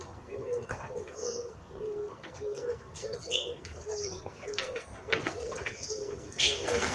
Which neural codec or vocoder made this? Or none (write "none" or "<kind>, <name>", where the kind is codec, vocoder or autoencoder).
codec, SNAC